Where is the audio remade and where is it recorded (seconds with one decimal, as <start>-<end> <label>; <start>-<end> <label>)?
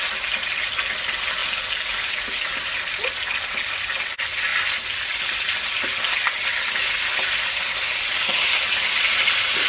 0.0-9.7 recorded